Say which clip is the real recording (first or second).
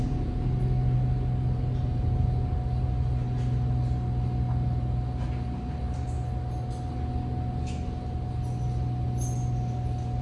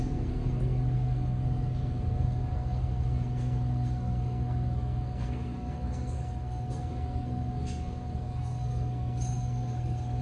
first